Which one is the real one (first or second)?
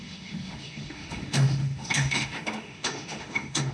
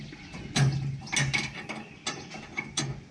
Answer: second